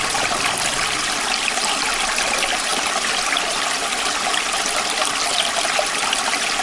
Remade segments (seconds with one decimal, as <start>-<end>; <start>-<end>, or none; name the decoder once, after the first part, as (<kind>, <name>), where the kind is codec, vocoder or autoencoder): none